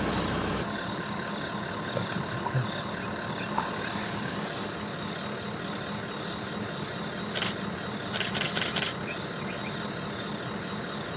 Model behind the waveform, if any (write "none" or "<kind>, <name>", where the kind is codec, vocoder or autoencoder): none